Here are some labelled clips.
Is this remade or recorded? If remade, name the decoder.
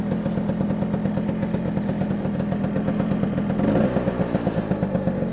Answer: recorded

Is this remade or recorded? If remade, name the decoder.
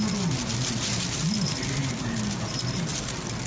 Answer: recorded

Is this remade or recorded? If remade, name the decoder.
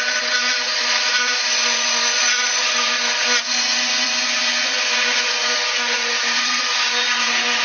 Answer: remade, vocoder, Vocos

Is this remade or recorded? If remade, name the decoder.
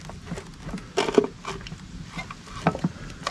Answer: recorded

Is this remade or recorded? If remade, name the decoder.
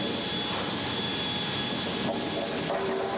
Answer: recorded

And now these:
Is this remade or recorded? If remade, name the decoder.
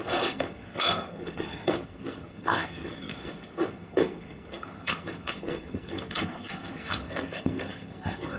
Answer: remade, codec, SNAC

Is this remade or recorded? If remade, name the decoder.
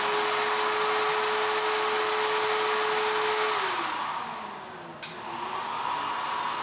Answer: recorded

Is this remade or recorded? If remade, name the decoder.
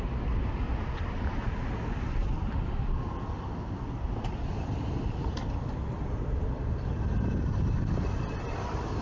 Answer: recorded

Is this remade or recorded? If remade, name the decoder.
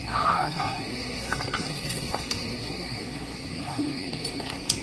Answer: remade, codec, SNAC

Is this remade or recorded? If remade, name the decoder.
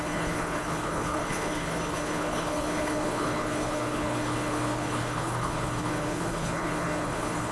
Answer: remade, codec, HILCodec